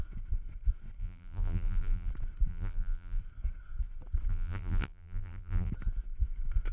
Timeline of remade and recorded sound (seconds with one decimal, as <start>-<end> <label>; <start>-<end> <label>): 0.0-1.0 recorded; 1.0-2.1 remade; 2.1-2.5 recorded; 2.5-3.2 remade; 3.2-4.3 recorded; 4.3-5.7 remade; 5.7-6.7 recorded